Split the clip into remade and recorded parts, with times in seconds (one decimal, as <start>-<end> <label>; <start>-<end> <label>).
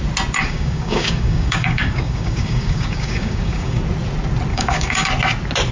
0.0-0.4 recorded; 0.4-3.8 remade; 3.8-4.5 recorded; 4.5-5.1 remade; 5.1-5.7 recorded